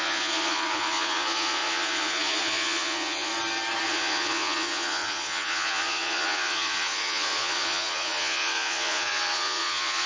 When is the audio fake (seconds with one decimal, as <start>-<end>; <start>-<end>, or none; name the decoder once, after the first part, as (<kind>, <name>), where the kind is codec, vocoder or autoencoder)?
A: 0.0-3.3 (vocoder, Vocos); 3.9-10.1